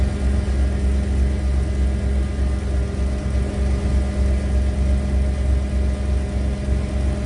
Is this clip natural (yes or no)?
yes